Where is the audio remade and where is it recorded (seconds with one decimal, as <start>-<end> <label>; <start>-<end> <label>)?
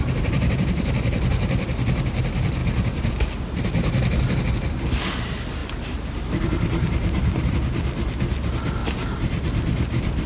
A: 0.0-5.6 recorded; 5.6-7.5 remade; 7.5-8.8 recorded; 8.8-10.3 remade